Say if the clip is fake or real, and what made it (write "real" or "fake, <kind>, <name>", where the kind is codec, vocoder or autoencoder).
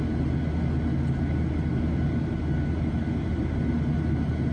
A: real